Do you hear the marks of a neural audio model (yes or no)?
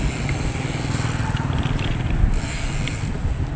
no